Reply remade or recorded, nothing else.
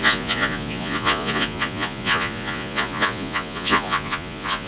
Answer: remade